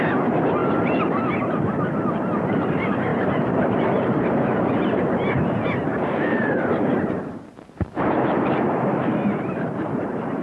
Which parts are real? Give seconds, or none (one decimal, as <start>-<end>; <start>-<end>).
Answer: none